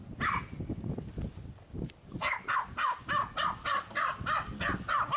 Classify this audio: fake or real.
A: real